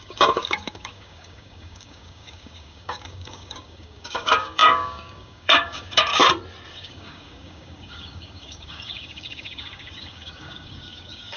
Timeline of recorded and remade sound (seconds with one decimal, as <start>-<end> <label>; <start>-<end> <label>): 0.0-6.2 remade; 6.2-6.7 recorded; 6.7-11.4 remade